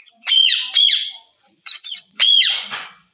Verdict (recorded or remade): remade